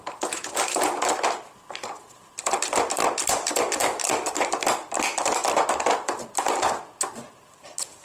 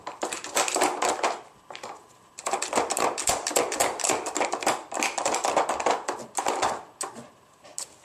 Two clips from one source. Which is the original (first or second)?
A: second